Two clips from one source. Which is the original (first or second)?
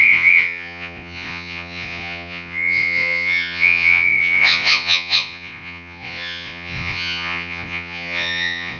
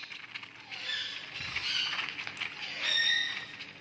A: second